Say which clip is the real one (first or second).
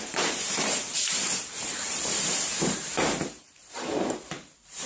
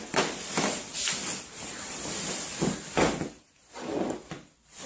second